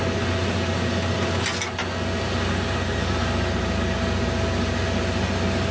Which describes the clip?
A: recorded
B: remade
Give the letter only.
A